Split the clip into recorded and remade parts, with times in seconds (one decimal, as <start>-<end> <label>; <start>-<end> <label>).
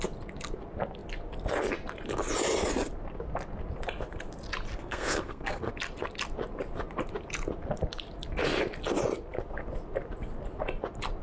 0.0-4.7 recorded; 4.7-5.7 remade; 5.7-11.2 recorded